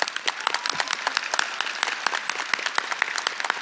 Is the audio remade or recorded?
recorded